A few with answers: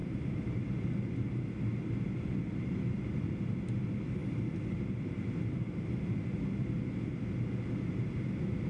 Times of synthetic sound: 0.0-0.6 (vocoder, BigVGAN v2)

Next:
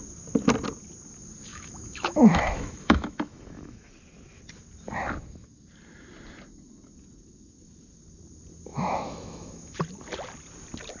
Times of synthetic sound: 1.5-3.9 (autoencoder, DAC-VAE); 8.7-9.8